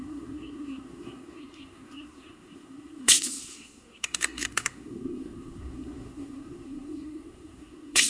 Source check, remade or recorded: remade